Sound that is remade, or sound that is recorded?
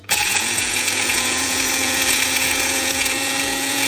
remade